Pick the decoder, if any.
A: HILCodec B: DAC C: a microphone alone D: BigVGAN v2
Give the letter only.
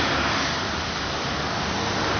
C